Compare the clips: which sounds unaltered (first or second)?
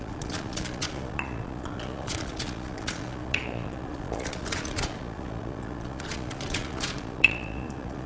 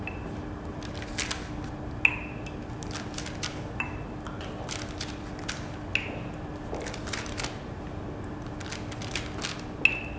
second